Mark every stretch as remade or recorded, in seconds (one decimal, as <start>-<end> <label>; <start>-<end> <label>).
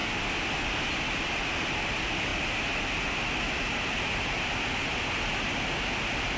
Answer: 0.0-6.4 recorded